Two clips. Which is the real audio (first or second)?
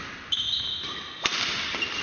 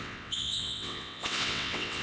first